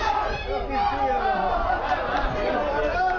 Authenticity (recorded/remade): recorded